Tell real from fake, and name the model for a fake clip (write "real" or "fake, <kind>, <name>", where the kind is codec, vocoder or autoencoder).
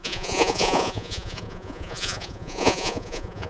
fake, vocoder, Vocos